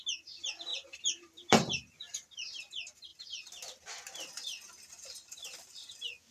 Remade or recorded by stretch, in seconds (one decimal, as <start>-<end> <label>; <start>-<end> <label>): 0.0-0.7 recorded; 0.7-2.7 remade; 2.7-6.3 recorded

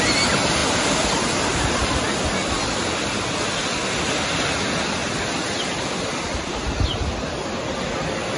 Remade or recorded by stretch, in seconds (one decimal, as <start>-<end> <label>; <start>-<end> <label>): 0.0-8.4 recorded

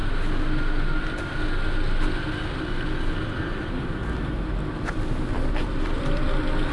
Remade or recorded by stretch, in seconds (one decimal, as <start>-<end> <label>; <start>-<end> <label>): 0.0-3.4 recorded; 3.4-4.0 remade; 4.0-4.9 recorded; 4.9-6.7 remade